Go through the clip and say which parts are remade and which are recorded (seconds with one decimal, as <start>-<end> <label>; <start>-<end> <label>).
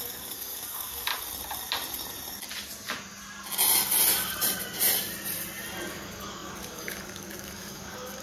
0.0-1.1 remade; 1.1-5.9 recorded; 5.9-8.2 remade